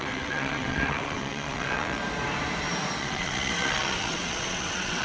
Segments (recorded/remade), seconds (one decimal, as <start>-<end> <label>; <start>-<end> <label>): 0.0-2.0 remade; 2.0-3.0 recorded; 3.0-5.0 remade